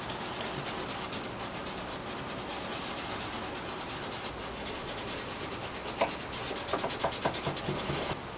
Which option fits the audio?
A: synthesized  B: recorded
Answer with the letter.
B